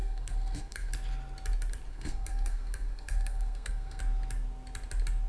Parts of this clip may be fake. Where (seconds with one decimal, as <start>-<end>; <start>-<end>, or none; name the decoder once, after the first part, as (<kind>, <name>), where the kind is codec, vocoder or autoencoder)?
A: 0.0-0.9 (codec, SNAC); 1.9-4.0

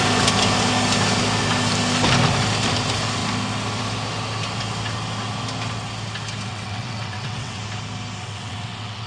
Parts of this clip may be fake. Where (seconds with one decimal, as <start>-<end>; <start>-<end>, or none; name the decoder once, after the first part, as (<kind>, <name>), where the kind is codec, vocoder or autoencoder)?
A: 6.5-7.6 (vocoder, WaveNeXt); 8.2-9.1

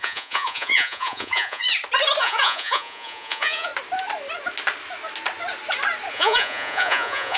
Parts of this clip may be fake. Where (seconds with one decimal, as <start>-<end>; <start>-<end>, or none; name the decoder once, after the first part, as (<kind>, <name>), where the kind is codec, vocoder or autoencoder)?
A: 0.0-1.6 (vocoder, Vocos); 2.2-3.7; 6.1-7.4

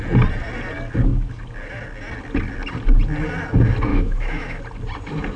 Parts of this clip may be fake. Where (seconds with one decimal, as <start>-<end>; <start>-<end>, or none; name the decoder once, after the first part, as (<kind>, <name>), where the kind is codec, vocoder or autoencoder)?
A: 3.9-4.6 (autoencoder, DAC-VAE)

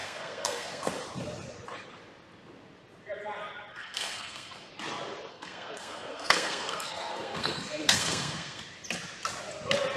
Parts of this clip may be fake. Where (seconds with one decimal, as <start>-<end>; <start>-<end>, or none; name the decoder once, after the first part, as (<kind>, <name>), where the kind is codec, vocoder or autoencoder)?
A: 0.0-0.9 (codec, SNAC); 3.7-4.7; 5.3-8.6

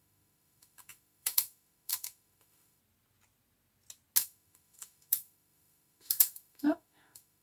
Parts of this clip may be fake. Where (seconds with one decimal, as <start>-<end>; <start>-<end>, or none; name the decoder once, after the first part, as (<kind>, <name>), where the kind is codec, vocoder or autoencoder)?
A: 0.0-2.8 (autoencoder, DAC-VAE); 4.2-7.4